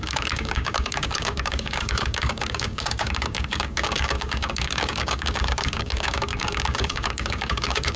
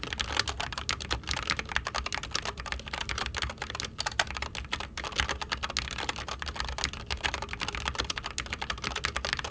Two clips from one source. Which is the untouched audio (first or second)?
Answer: second